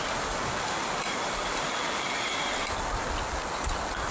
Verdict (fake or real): real